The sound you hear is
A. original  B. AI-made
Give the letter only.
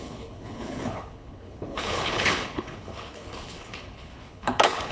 B